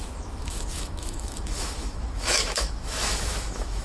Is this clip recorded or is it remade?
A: remade